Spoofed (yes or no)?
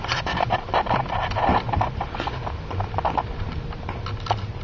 no